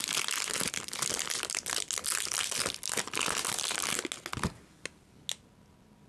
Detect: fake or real real